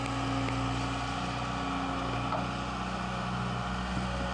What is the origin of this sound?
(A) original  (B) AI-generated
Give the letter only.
A